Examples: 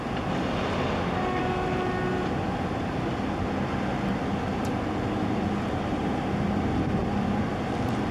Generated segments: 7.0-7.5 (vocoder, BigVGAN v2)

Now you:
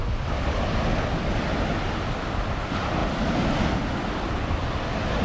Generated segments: none

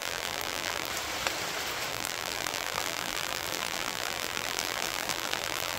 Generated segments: 0.0-0.9 (vocoder, BigVGAN v2); 1.9-5.8

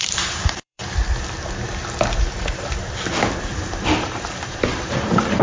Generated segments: 0.0-0.8 (vocoder, BigVGAN v2); 2.2-5.4

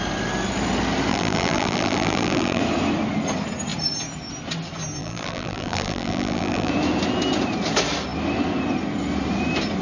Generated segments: 1.1-2.6 (vocoder, BigVGAN v2); 5.0-6.7

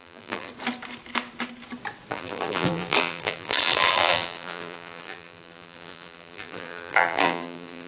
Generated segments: 0.0-0.5 (vocoder, BigVGAN v2); 2.1-7.9